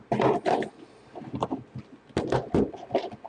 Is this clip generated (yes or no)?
no